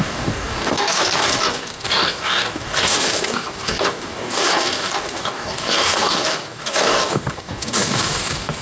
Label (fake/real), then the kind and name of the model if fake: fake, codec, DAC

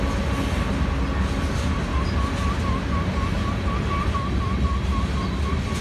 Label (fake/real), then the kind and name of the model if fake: real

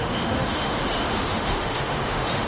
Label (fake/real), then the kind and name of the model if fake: fake, autoencoder, DAC-VAE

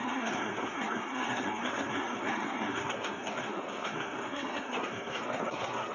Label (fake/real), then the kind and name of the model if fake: fake, codec, SNAC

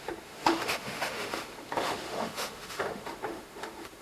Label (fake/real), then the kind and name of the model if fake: fake, autoencoder, DAC-VAE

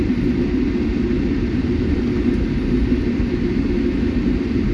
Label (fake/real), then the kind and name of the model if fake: real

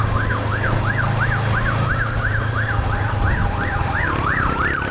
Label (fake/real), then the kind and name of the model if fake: real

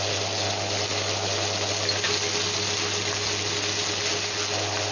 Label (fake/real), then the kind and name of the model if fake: real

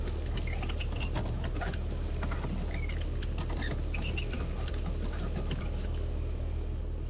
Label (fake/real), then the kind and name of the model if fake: real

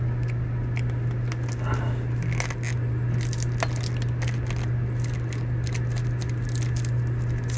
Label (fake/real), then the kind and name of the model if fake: real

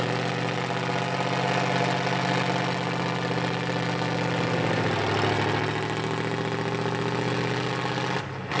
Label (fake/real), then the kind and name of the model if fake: real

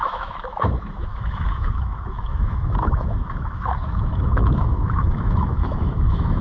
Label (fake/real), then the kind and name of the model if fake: fake, autoencoder, DAC-VAE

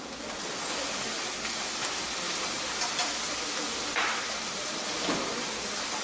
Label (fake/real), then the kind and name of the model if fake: real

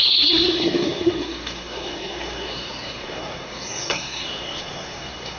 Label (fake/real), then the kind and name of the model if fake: fake, codec, SNAC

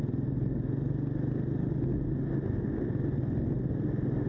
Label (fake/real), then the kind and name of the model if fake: real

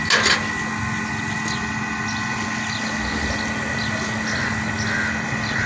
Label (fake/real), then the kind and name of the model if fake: real